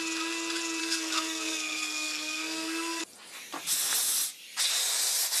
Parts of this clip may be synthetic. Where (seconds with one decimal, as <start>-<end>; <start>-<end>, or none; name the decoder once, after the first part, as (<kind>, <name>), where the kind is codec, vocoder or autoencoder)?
0.8-3.0 (codec, SNAC)